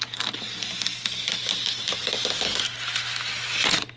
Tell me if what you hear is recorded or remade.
recorded